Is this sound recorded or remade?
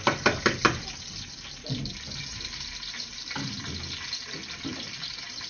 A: recorded